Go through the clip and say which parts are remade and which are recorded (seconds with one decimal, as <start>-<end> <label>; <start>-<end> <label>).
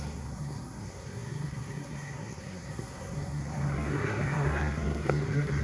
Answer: 0.0-5.6 remade